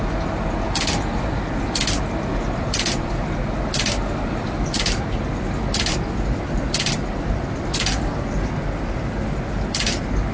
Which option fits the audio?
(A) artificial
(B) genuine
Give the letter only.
B